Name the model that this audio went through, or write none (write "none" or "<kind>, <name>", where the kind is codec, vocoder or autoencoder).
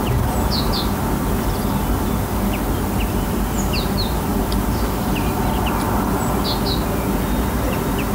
none